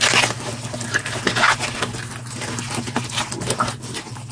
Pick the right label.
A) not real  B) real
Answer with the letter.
B